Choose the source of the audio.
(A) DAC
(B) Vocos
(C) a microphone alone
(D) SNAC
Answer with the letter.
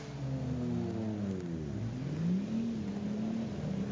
C